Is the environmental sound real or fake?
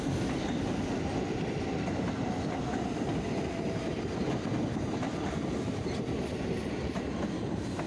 real